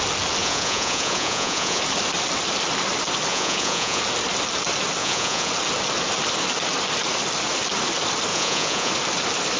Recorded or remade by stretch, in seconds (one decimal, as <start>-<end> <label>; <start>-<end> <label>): 0.0-0.4 recorded; 0.4-1.8 remade; 1.8-3.3 recorded; 3.3-4.0 remade; 4.0-5.0 recorded; 5.0-5.5 remade; 5.5-8.3 recorded; 8.3-8.9 remade; 8.9-9.6 recorded